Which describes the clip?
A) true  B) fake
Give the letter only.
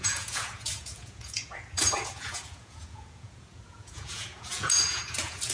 B